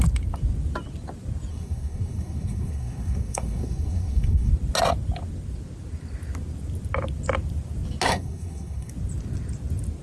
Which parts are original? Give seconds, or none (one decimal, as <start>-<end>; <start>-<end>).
0.0-1.5; 4.5-8.1; 8.9-10.0